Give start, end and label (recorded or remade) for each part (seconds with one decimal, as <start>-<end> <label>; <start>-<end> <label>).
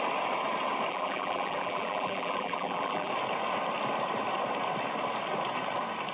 0.0-0.9 recorded; 0.9-3.1 remade; 3.1-6.1 recorded